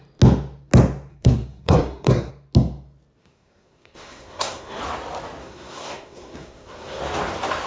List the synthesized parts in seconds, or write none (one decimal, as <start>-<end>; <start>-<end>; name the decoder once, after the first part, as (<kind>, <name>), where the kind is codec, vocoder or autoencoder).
1.1-2.3 (codec, SNAC); 3.2-4.8; 5.4-7.0